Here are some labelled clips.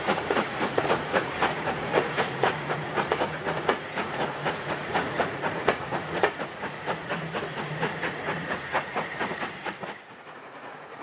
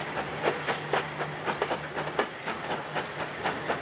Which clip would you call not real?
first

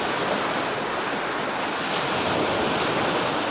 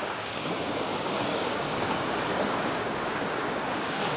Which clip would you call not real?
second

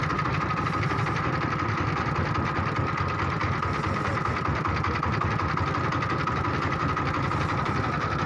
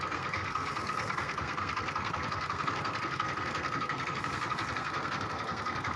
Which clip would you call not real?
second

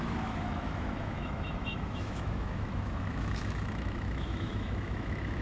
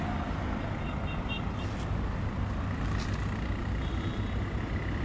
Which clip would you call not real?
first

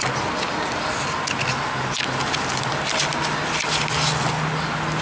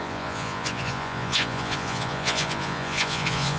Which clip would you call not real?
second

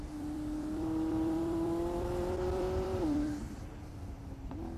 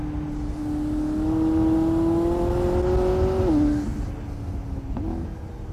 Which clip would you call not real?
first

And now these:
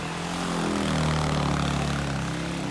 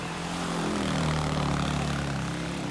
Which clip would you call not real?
second